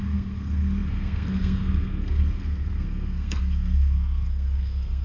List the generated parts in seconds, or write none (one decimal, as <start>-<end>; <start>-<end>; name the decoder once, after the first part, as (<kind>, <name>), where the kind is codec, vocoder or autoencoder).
0.0-5.0 (codec, SNAC)